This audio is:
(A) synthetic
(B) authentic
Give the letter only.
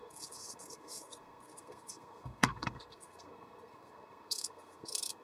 A